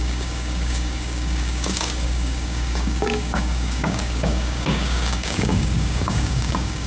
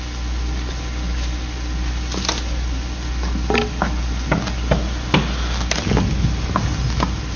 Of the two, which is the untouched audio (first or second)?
second